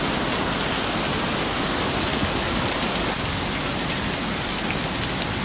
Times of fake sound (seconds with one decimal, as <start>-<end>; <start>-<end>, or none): none